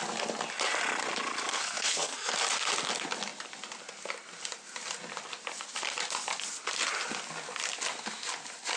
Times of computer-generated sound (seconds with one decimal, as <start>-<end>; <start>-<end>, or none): 1.5-2.3